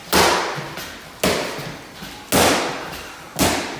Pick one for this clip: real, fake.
real